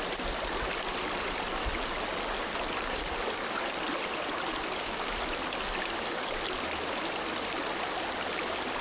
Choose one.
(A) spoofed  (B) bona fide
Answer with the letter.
B